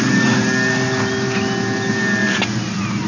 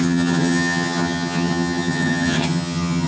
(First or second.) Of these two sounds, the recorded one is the first